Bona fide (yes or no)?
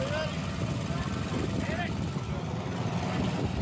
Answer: yes